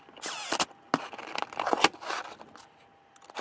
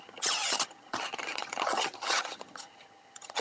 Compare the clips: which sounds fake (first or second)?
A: second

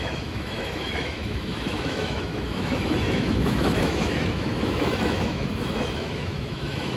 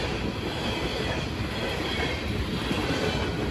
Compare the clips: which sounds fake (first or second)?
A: first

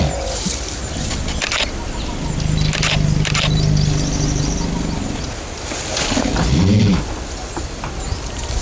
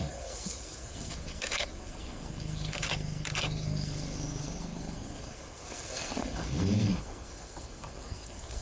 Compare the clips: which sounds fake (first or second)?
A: second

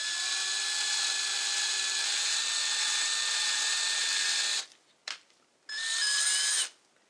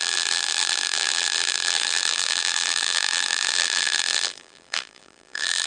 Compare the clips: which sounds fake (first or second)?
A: second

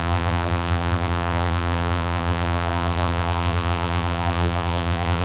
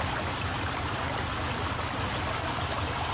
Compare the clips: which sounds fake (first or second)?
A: first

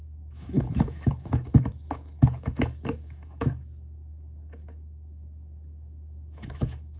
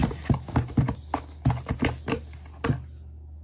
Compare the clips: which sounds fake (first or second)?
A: first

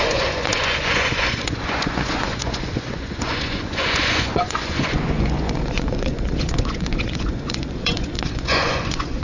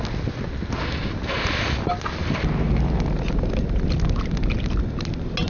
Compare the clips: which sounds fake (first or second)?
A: first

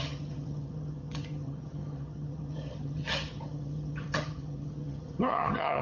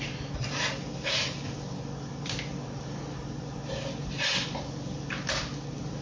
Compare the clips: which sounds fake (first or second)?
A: first